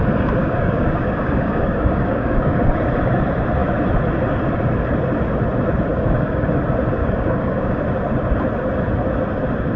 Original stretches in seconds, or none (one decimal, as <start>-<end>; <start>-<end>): 0.0-0.4; 2.7-5.9; 6.5-7.0; 7.8-9.8